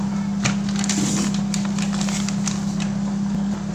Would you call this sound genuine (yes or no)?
yes